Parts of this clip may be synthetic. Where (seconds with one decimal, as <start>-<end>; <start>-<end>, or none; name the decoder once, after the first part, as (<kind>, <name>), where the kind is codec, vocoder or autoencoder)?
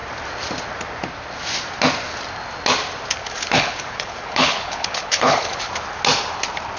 3.2-5.7 (codec, HILCodec)